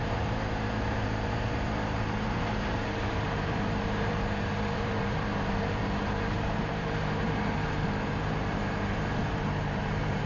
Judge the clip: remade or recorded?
remade